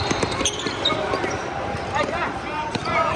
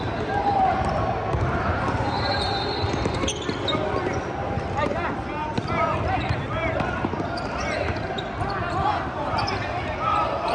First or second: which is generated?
first